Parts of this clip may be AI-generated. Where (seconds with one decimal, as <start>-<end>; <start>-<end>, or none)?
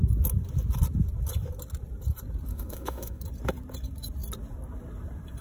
2.5-3.2